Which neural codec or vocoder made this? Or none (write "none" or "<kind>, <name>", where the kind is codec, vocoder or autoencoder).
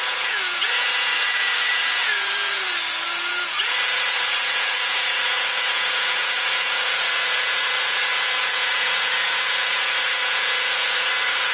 vocoder, Vocos